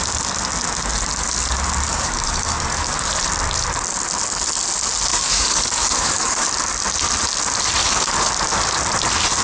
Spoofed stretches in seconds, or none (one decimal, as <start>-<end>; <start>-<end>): 1.9-3.1; 5.1-6.5; 7.8-8.3